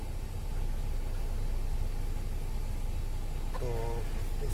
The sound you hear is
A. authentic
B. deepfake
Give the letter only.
A